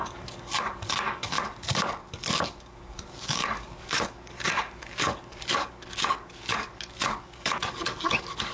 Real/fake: fake